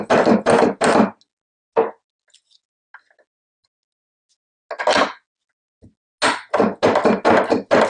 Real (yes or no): yes